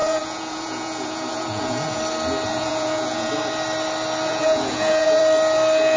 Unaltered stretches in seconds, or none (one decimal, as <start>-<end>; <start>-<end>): 2.0-2.5; 3.3-4.3; 5.2-6.0

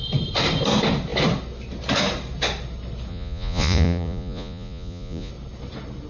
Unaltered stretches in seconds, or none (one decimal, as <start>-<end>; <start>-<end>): 0.0-3.1; 5.3-6.1

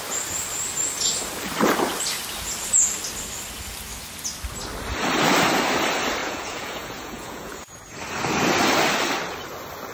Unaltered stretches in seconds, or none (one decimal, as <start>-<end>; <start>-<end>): 0.0-6.2; 7.8-9.9

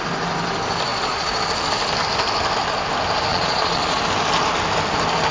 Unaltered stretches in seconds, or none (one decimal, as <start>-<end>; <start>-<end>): 0.0-0.9; 1.4-3.3; 4.0-5.3

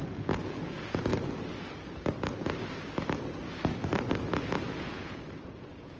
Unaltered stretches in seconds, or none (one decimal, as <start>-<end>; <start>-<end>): 1.1-4.7